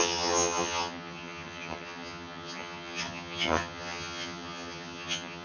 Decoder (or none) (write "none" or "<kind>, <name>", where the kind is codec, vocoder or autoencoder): vocoder, HiFi-GAN